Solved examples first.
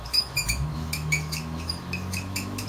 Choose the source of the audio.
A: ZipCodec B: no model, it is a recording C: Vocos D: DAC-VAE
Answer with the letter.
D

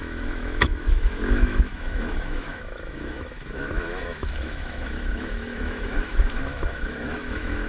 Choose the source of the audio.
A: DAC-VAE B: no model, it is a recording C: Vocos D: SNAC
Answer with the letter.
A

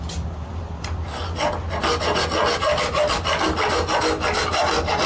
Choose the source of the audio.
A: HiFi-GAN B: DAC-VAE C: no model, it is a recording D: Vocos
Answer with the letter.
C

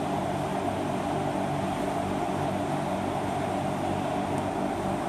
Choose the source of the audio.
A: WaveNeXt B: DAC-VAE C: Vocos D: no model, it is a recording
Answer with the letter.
D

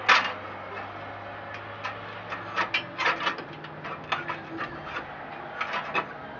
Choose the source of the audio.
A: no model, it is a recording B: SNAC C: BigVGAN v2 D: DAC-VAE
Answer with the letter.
A